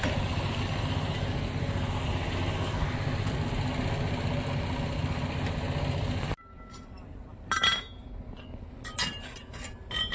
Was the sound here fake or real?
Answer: real